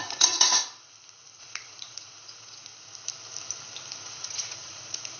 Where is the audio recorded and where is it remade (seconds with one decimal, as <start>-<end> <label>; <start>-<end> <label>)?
0.0-0.6 remade; 0.6-1.4 recorded; 1.4-2.7 remade; 2.7-4.0 recorded; 4.0-5.2 remade